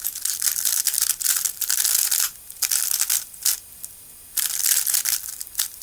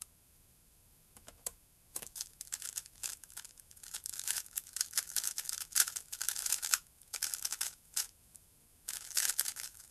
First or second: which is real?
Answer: first